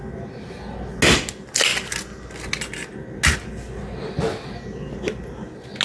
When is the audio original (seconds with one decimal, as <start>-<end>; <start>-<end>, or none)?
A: 0.0-5.8